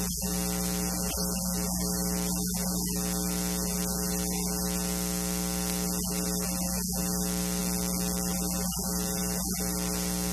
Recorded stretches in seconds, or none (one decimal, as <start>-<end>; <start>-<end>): 0.0-10.3